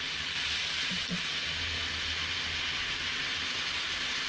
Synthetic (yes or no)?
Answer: no